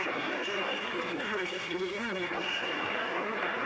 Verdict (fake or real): fake